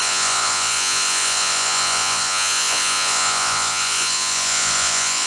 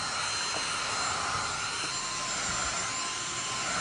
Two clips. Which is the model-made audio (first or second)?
first